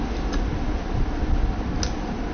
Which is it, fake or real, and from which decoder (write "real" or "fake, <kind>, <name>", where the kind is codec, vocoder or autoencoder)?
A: real